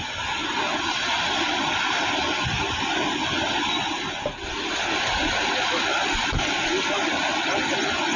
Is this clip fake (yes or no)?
no